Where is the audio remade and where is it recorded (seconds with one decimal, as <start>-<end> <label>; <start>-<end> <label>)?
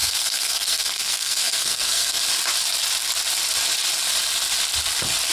0.0-2.2 remade; 2.2-5.3 recorded